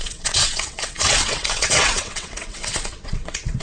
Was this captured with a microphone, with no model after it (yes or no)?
no